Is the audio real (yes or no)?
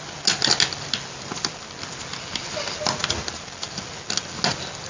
yes